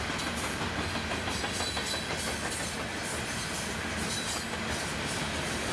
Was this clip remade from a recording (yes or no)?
no